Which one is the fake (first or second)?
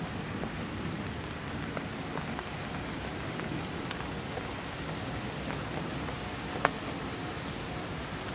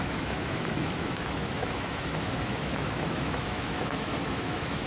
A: second